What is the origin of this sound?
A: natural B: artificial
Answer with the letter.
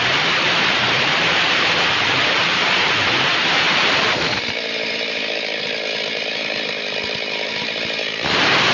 B